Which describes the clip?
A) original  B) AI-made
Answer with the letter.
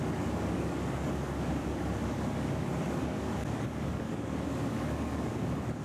B